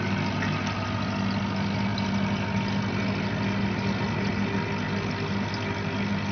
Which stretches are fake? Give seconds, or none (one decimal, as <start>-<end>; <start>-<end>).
none